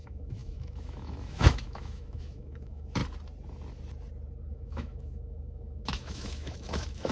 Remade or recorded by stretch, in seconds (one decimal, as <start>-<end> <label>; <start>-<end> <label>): 0.0-3.0 remade; 3.0-4.5 recorded; 4.5-7.1 remade